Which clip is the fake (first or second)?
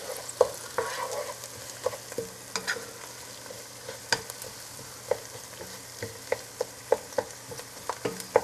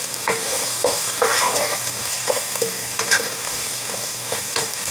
second